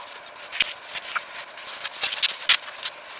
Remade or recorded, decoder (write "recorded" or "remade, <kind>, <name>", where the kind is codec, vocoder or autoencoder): recorded